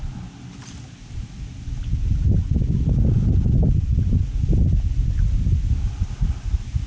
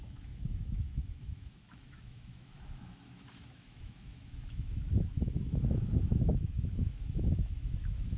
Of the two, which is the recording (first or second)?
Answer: first